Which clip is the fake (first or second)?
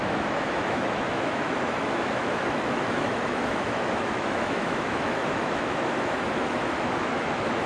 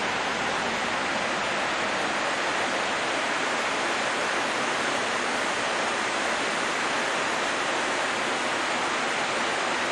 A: first